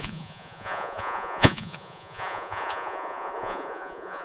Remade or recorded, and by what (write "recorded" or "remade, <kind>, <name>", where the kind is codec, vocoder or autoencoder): remade, vocoder, Vocos